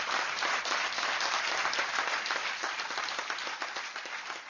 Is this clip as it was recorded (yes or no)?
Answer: yes